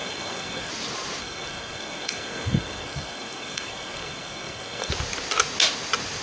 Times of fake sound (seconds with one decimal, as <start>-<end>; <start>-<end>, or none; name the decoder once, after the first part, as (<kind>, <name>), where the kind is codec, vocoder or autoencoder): 0.0-0.7 (codec, SNAC); 1.2-4.9